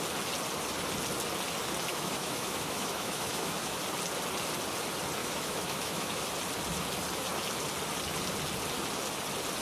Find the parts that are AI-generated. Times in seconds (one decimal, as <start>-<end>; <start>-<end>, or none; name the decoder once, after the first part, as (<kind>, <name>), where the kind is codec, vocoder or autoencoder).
1.9-3.8 (autoencoder, DAC-VAE); 5.2-6.2